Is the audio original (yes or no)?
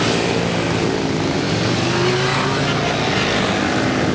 yes